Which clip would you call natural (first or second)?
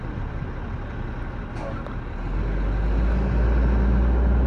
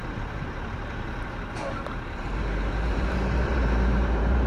first